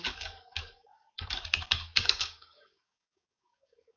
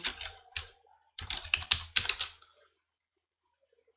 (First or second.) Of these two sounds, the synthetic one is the first